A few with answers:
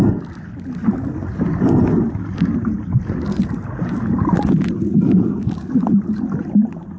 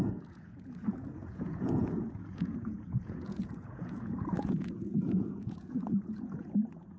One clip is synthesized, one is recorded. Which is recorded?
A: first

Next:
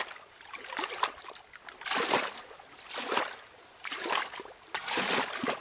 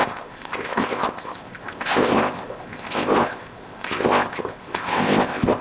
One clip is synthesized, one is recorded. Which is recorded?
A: first